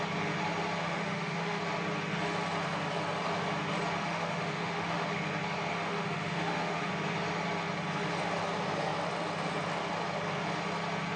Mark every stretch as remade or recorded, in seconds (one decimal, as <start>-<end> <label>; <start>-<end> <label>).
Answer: 0.0-0.8 recorded; 0.8-1.6 remade; 1.6-4.0 recorded; 4.0-5.1 remade; 5.1-5.7 recorded; 5.7-6.9 remade; 6.9-11.2 recorded